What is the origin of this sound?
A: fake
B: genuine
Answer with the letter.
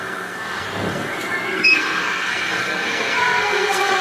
A